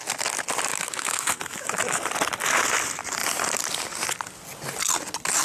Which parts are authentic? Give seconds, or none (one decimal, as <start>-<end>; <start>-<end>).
0.0-0.7; 2.0-5.4